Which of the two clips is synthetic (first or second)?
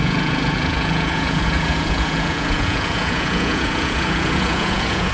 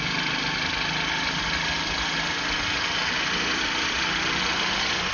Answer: first